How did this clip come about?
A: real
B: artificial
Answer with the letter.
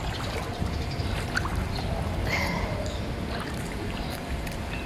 A